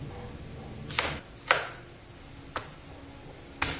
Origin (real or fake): real